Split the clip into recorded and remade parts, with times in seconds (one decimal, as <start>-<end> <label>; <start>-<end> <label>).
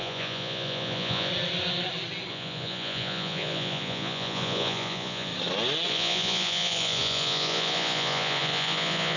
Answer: 0.0-1.3 remade; 1.3-2.3 recorded; 2.3-5.3 remade; 5.3-5.9 recorded; 5.9-9.2 remade